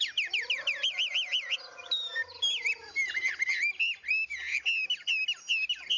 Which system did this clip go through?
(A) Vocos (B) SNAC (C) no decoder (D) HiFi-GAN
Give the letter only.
C